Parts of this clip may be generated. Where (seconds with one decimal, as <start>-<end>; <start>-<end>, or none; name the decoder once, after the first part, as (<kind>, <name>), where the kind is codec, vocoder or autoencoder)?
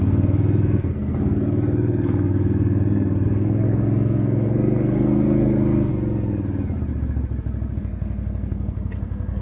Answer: 0.0-5.9 (codec, SNAC); 7.8-9.4